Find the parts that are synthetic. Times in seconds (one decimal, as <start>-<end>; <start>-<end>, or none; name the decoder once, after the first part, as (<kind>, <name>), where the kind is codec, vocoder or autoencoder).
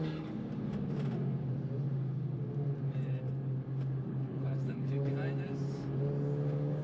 4.1-5.1 (codec, HILCodec)